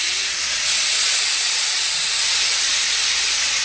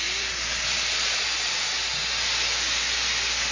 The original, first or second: second